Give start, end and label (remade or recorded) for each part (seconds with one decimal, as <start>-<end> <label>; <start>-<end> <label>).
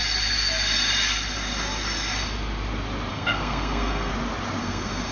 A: 0.0-3.1 recorded; 3.1-4.1 remade; 4.1-4.6 recorded; 4.6-5.1 remade